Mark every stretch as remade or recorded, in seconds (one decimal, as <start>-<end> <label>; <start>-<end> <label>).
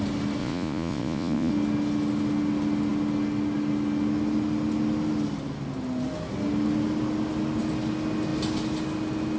0.0-0.4 recorded; 0.4-1.5 remade; 1.5-9.4 recorded